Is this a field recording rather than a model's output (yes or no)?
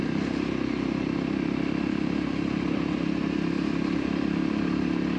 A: yes